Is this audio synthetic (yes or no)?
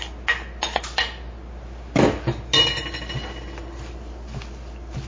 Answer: no